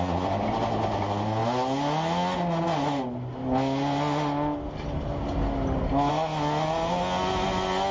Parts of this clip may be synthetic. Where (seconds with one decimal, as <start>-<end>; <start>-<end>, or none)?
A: none